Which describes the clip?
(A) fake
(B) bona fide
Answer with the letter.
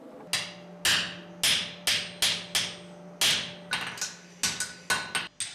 B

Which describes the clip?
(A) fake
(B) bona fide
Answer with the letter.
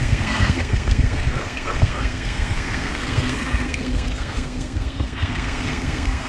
A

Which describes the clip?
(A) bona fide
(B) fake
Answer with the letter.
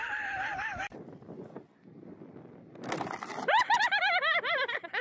B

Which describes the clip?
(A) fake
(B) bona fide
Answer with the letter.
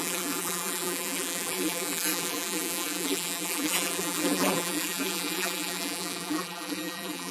A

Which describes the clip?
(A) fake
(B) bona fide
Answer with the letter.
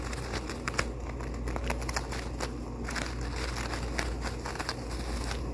B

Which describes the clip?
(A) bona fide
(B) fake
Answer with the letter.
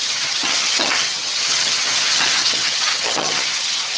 B